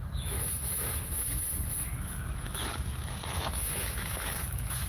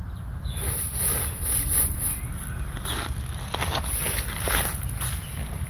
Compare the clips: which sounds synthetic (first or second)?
first